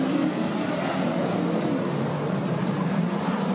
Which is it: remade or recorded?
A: recorded